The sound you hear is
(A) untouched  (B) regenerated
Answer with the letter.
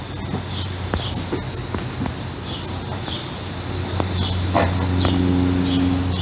A